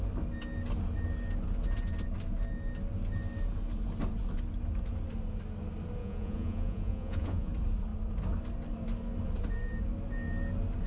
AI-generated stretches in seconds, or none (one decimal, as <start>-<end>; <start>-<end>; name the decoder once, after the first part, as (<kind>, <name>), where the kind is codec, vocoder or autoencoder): 6.0-7.5 (vocoder, Vocos)